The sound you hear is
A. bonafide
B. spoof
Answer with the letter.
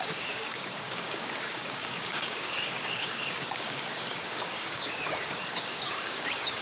B